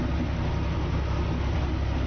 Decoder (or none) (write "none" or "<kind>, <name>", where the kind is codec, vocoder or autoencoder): none